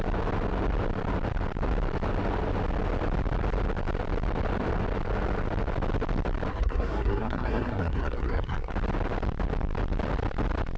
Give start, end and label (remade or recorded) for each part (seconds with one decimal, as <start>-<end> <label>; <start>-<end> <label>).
0.0-6.5 recorded; 6.5-8.7 remade; 8.7-10.8 recorded